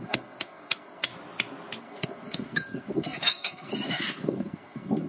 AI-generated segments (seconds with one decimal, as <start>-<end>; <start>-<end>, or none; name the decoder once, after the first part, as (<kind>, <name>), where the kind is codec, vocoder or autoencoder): 0.0-1.1 (codec, SNAC); 1.8-5.1